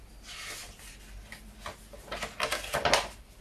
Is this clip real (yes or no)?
yes